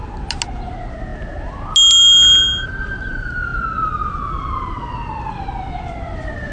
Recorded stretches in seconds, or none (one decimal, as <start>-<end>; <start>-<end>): 0.0-6.5

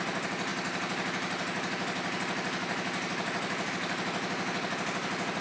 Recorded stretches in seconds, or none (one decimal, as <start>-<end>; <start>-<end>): 0.0-5.4

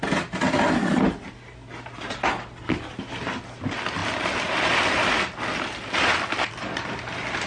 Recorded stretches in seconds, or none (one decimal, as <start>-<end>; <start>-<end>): 0.0-7.5

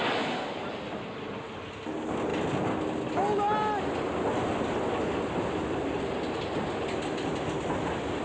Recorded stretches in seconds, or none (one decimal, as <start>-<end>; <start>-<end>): 0.0-8.2